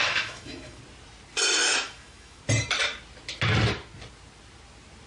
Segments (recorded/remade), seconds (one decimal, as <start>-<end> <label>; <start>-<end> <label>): 0.0-0.8 remade; 0.8-1.6 recorded; 1.6-2.4 remade; 2.4-5.1 recorded